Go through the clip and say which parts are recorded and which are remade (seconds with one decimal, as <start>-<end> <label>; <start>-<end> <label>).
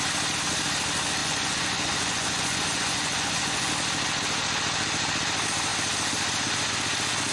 0.0-1.2 recorded; 1.2-3.7 remade; 3.7-7.3 recorded